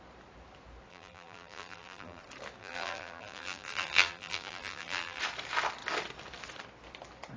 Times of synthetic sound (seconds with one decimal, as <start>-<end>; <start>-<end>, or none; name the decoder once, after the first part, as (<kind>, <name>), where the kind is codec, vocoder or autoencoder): 0.9-2.2 (vocoder, BigVGAN v2); 2.6-5.2